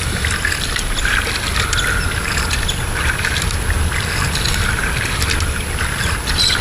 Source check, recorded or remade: recorded